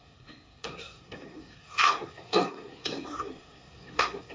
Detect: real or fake fake